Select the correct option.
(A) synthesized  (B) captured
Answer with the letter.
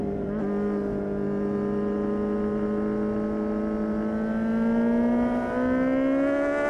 B